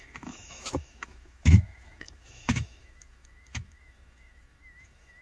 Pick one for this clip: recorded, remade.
remade